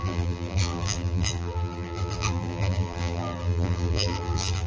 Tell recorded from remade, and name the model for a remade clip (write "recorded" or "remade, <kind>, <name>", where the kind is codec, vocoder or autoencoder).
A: remade, vocoder, BigVGAN v2